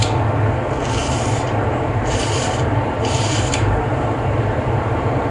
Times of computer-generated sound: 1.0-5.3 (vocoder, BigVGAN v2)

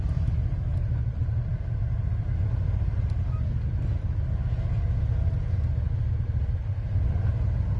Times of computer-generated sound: none

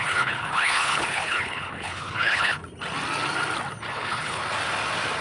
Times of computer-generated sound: 0.0-2.6 (codec, HILCodec); 3.9-4.4

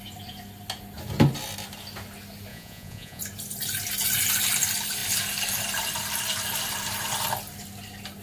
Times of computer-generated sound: 2.5-3.2 (vocoder, Vocos)

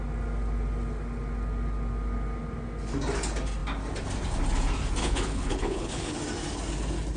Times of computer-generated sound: 5.0-6.2 (codec, HILCodec)

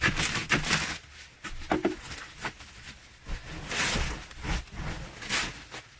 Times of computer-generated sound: none

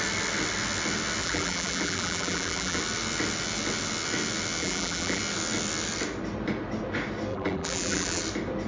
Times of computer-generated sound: 1.2-2.8 (vocoder, BigVGAN v2); 4.6-5.2; 7.3-8.2